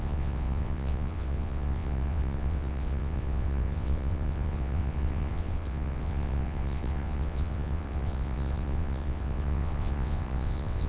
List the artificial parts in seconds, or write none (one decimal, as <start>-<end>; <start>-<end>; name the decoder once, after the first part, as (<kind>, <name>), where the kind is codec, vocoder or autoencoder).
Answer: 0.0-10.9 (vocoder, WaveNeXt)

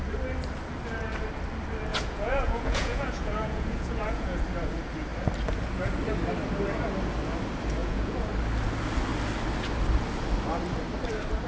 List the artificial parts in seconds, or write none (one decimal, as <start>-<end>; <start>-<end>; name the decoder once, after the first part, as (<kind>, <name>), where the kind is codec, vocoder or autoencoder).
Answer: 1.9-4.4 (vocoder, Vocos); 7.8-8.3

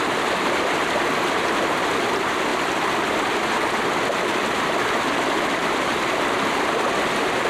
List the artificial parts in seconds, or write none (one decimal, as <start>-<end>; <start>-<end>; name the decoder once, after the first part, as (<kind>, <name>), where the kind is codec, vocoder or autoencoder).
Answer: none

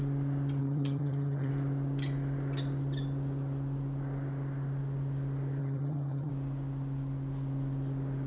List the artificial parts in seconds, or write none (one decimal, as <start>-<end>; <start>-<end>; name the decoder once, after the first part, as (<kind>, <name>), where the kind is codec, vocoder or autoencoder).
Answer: 0.6-1.5 (vocoder, HiFi-GAN); 5.6-6.3

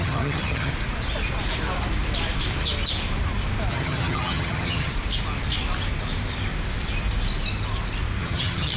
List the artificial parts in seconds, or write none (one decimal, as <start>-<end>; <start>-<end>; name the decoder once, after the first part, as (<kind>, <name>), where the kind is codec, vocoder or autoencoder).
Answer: 0.0-0.7 (vocoder, HiFi-GAN); 3.7-4.9; 8.2-8.8

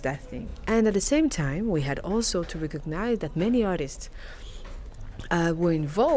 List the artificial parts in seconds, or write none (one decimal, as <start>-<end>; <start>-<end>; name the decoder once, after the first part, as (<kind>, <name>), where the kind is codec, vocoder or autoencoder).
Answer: none

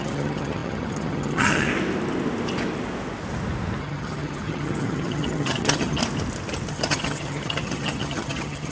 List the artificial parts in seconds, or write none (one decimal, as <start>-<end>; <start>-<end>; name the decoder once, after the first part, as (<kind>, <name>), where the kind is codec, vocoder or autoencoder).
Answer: 0.0-1.7 (vocoder, HiFi-GAN); 3.8-6.0; 6.7-8.7